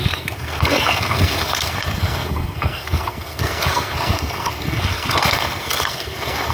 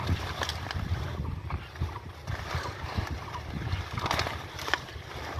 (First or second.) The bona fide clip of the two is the second